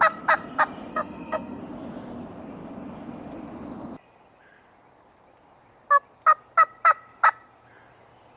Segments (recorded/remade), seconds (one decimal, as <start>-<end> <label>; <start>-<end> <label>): 0.0-0.9 recorded; 0.9-1.6 remade; 1.6-8.4 recorded